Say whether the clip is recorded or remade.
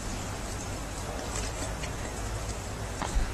recorded